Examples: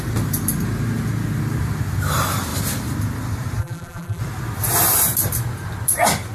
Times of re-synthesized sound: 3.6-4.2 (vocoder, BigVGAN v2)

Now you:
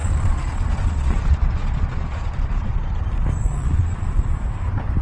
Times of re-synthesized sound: 0.0-3.0 (vocoder, Vocos); 3.4-4.3

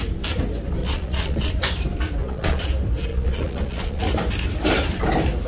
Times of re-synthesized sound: 0.8-1.5 (vocoder, Vocos); 2.2-2.7; 3.1-4.0